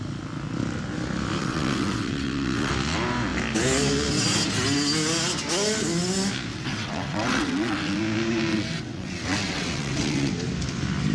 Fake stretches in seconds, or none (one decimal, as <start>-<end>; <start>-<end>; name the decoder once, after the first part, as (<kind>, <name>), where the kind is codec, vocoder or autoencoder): 1.4-2.7 (vocoder, WaveNeXt); 6.5-8.0; 8.5-10.3

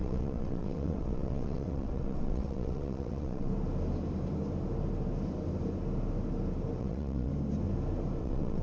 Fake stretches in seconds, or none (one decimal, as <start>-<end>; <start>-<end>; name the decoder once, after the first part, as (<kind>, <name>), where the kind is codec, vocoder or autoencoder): 0.0-3.5 (vocoder, WaveNeXt); 6.8-7.3; 8.2-8.6